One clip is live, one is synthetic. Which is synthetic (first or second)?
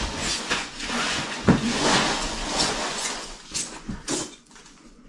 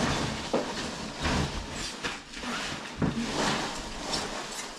first